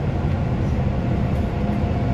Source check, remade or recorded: recorded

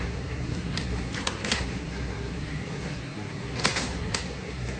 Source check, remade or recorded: remade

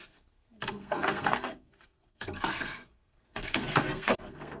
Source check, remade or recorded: remade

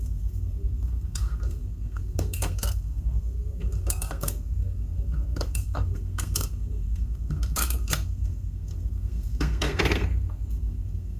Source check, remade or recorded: remade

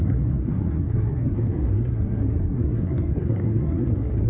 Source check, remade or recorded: remade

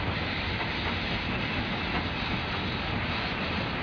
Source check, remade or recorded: recorded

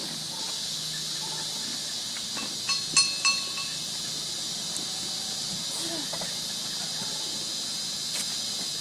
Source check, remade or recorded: recorded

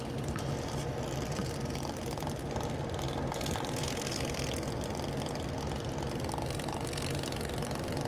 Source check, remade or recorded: recorded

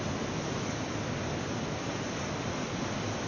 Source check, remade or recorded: recorded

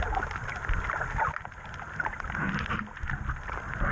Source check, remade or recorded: recorded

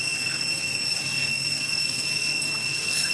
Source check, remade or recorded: remade